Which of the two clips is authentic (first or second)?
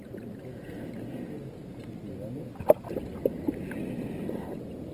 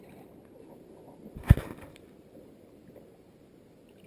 first